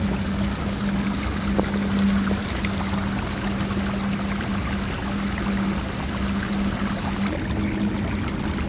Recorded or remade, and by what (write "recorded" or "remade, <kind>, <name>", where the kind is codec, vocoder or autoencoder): recorded